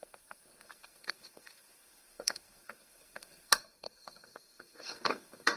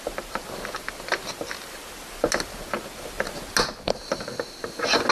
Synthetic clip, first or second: first